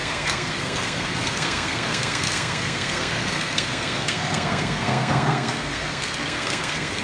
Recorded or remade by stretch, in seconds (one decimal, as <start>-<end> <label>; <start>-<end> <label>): 0.0-7.0 remade